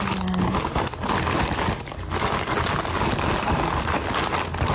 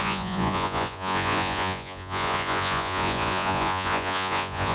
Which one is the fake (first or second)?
second